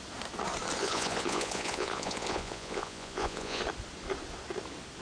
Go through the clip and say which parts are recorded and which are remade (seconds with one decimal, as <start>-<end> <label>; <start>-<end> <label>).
0.0-0.8 recorded; 0.8-3.6 remade; 3.6-5.0 recorded